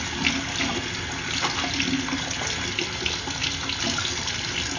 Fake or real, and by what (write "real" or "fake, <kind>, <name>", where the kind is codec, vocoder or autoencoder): real